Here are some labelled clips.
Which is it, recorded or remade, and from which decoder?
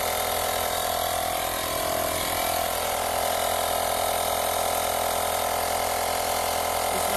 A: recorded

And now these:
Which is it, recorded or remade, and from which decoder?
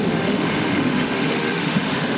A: remade, autoencoder, DAC-VAE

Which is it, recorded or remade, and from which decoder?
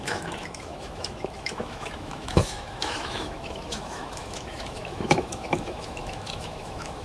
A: remade, autoencoder, DAC-VAE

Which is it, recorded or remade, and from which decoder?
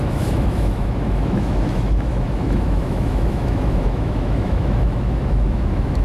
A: remade, autoencoder, DAC-VAE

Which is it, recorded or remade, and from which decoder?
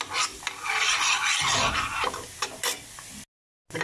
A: recorded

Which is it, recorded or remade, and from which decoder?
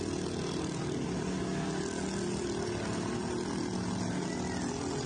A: recorded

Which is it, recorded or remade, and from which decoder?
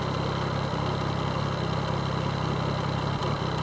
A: recorded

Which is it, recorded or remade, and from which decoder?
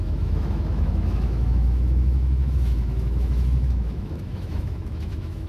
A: remade, autoencoder, DAC-VAE